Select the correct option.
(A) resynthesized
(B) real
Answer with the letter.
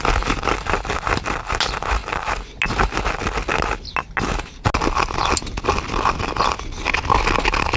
B